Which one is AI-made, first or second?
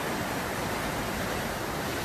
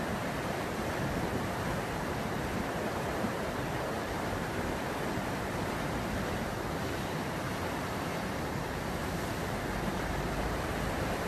second